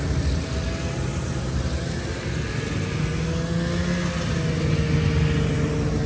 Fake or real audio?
real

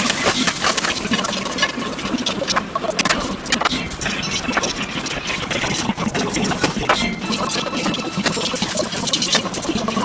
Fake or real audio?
real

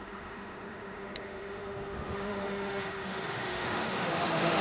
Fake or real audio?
fake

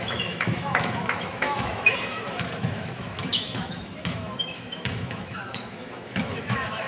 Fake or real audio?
fake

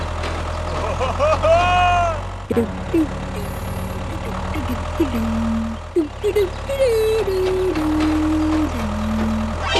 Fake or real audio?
real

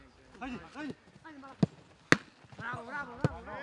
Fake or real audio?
real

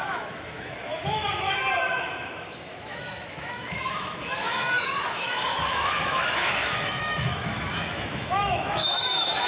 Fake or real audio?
fake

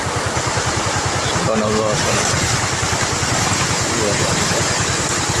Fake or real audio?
real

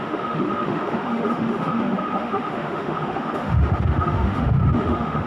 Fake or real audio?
fake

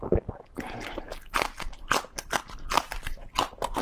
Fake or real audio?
real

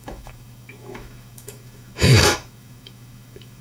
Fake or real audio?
fake